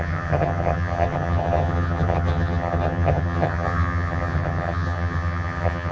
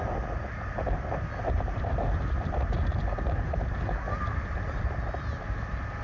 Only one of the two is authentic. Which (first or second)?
second